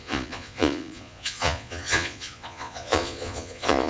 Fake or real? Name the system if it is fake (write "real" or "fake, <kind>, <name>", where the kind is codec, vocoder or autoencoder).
fake, vocoder, Vocos